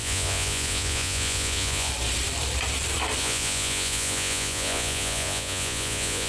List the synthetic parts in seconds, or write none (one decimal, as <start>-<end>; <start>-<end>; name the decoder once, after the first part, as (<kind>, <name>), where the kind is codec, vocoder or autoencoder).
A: 0.0-1.9 (vocoder, Vocos); 3.2-6.3